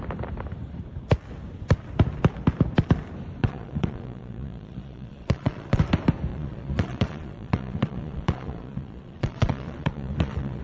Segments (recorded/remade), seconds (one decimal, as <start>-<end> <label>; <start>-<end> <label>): 0.0-3.4 recorded; 3.4-5.8 remade; 5.8-6.3 recorded; 6.3-10.6 remade